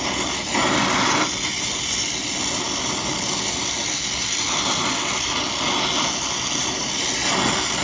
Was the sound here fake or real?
real